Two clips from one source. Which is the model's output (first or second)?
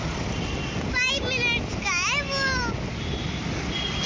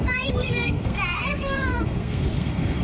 second